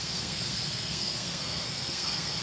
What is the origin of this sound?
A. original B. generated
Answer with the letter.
B